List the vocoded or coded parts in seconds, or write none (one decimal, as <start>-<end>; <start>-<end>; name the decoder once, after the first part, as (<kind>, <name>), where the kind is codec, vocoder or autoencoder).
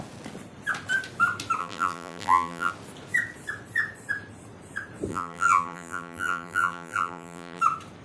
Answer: 1.6-2.7 (vocoder, BigVGAN v2); 5.1-7.6